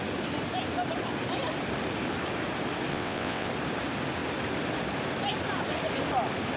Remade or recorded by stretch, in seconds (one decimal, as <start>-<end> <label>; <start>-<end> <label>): 0.0-2.9 recorded; 2.9-3.5 remade; 3.5-6.6 recorded